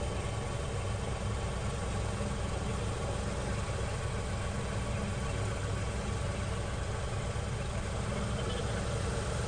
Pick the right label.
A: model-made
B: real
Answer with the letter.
B